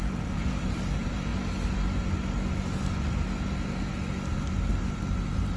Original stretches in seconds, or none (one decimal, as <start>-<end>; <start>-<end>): 1.3-4.7